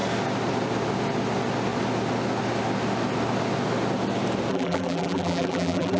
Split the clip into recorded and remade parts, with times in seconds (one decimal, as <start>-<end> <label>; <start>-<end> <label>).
0.0-4.5 recorded; 4.5-6.0 remade